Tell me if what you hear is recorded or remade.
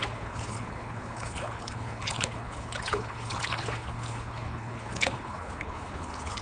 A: remade